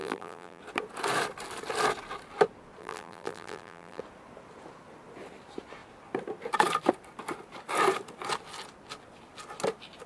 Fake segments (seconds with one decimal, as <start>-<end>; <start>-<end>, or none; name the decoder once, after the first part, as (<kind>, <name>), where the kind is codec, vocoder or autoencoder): 0.0-0.6 (vocoder, BigVGAN v2); 2.8-4.0